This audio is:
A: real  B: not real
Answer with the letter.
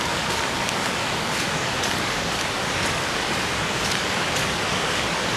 B